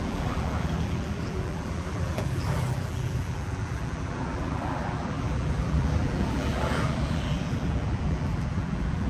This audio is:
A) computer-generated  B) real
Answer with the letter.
A